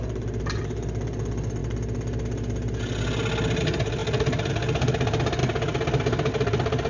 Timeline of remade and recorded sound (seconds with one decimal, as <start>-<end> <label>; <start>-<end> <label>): 0.0-6.9 recorded